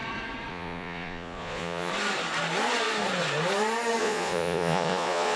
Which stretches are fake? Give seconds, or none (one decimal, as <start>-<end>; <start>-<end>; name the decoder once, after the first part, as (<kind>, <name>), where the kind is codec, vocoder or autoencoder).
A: 0.5-1.9 (vocoder, Vocos); 4.0-5.4